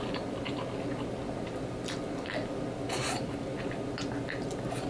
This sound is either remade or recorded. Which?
recorded